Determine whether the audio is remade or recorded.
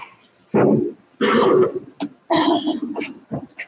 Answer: recorded